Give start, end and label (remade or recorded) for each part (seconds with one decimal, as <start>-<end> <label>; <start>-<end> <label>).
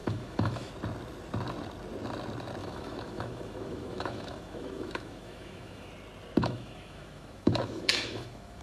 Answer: 0.0-0.7 remade; 0.7-2.6 recorded; 2.6-5.9 remade; 5.9-6.4 recorded; 6.4-8.6 remade